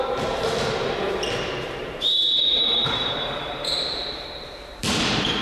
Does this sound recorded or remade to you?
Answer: remade